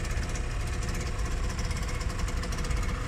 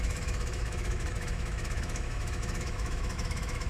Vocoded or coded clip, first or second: second